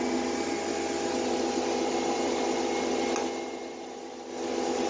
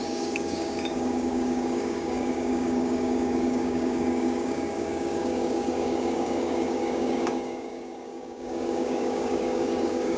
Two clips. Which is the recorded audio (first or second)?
first